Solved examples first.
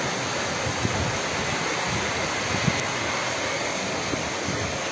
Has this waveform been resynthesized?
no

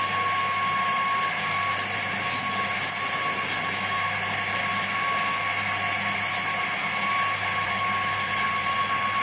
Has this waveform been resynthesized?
no